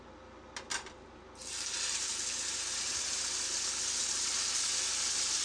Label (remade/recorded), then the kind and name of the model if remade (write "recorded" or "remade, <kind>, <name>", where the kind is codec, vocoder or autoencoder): recorded